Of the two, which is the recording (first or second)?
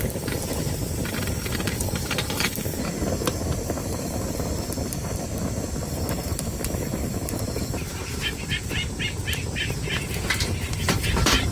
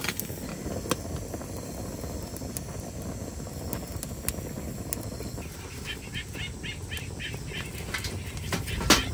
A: second